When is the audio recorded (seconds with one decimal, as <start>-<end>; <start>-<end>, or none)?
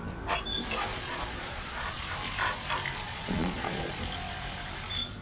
0.0-0.9; 2.0-3.0; 3.9-5.2